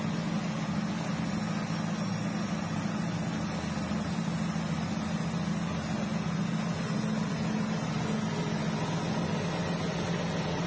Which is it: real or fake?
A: real